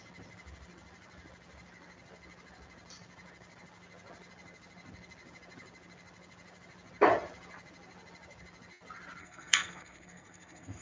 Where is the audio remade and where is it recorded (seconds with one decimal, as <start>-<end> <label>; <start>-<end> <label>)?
0.0-9.2 recorded; 9.2-10.8 remade